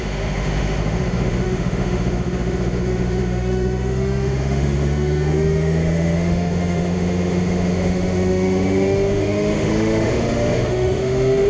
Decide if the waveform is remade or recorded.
remade